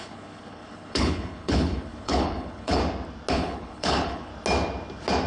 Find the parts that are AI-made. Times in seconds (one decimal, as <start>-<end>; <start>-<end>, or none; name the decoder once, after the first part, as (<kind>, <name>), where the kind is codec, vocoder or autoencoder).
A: 0.0-2.8 (codec, HILCodec); 3.3-4.3